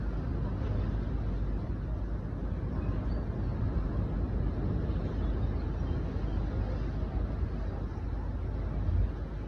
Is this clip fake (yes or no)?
no